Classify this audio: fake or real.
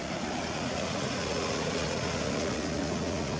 fake